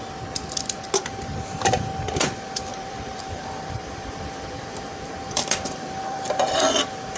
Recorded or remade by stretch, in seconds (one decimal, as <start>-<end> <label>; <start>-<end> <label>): 0.0-2.7 recorded; 2.7-7.2 remade